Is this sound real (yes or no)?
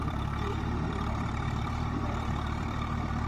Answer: no